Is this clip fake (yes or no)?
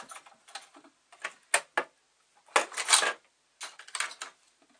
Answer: no